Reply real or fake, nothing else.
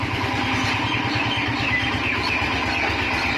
real